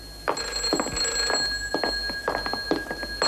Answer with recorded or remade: recorded